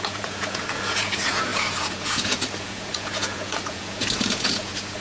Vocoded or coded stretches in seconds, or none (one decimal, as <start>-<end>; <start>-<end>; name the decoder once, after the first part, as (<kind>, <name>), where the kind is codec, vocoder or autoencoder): 0.0-5.0 (vocoder, Vocos)